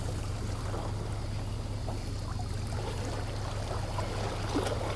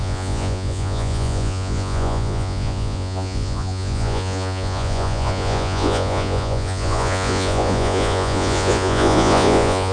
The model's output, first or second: second